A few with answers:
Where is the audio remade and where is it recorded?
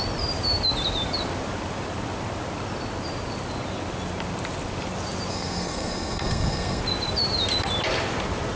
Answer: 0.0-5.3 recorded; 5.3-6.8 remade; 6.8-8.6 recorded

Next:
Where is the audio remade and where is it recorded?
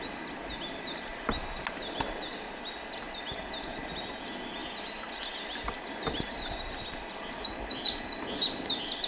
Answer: 0.0-9.1 recorded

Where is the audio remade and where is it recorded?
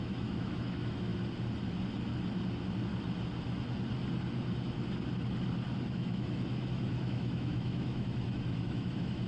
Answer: 0.0-1.1 remade; 1.1-5.9 recorded; 5.9-9.3 remade